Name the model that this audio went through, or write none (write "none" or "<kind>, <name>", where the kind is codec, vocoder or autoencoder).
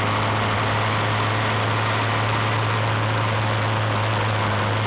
none